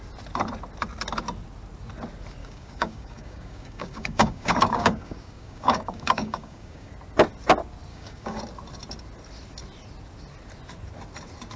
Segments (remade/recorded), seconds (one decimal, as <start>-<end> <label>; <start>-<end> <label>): 0.0-2.4 recorded; 2.4-6.9 remade; 6.9-7.9 recorded; 7.9-8.4 remade; 8.4-11.6 recorded